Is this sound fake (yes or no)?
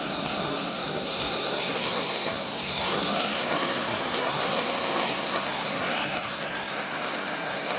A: yes